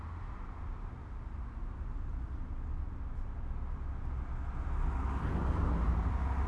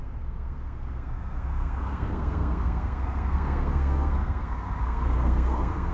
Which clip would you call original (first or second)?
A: first